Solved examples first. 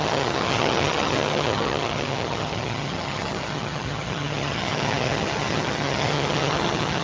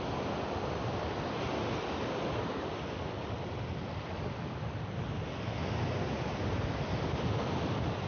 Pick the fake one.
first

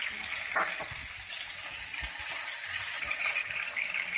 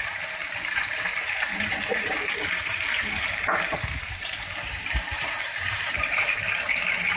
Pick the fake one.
second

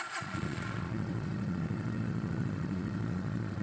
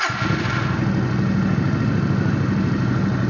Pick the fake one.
first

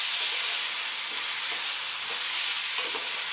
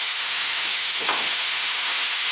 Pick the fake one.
second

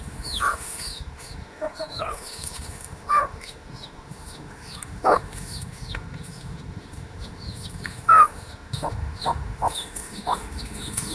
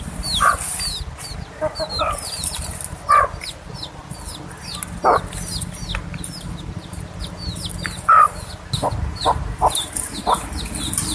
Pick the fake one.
first